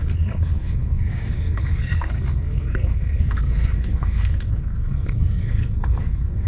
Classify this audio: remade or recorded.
remade